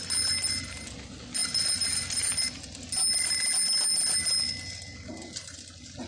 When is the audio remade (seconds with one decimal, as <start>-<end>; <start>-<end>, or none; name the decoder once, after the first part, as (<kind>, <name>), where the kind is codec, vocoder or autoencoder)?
none